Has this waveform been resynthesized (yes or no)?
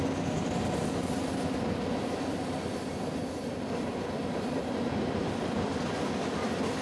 no